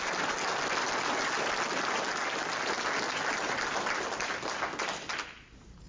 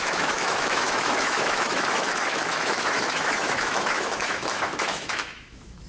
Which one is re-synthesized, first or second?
second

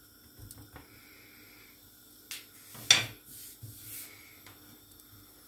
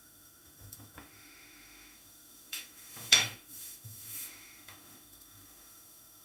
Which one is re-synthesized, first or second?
second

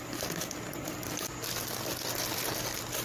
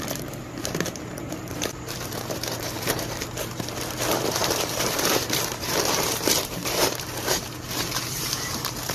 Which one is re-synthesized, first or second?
second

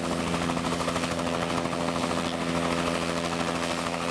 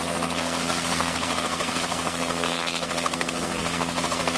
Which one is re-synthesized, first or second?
second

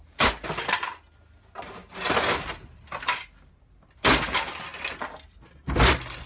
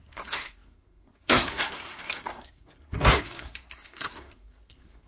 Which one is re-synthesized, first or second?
second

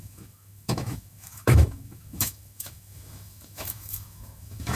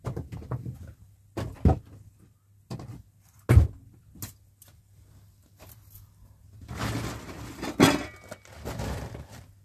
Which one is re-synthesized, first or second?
first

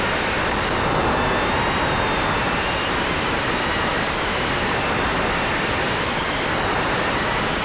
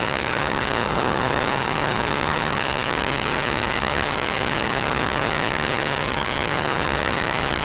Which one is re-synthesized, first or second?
second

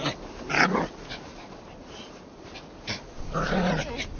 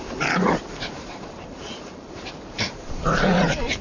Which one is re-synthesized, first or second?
second